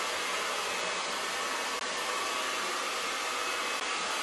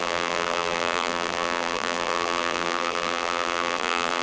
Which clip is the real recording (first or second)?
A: first